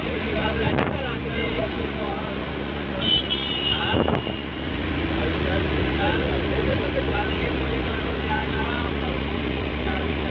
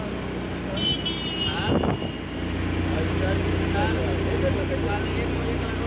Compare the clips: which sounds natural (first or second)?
second